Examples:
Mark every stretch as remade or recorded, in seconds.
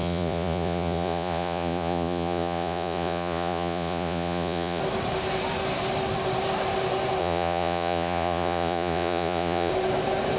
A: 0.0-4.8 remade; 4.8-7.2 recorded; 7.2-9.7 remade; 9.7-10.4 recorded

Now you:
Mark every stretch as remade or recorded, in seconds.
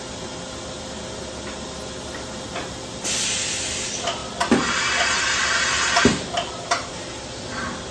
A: 0.0-7.9 recorded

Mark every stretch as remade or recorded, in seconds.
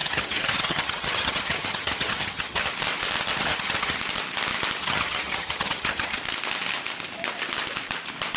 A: 0.0-2.7 remade; 2.7-3.3 recorded; 3.3-4.0 remade; 4.0-4.8 recorded; 4.8-6.2 remade; 6.2-8.4 recorded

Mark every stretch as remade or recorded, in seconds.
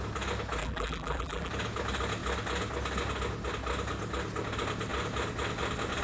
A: 0.0-0.6 recorded; 0.6-1.5 remade; 1.5-6.0 recorded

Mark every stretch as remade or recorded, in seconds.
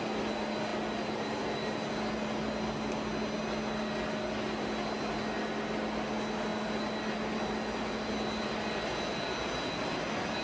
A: 0.0-10.4 recorded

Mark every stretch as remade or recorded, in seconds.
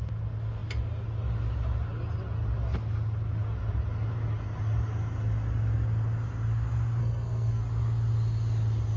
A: 0.0-7.0 recorded; 7.0-7.6 remade; 7.6-9.0 recorded